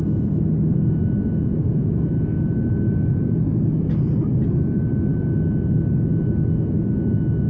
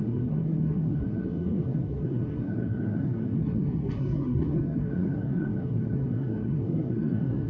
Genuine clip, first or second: first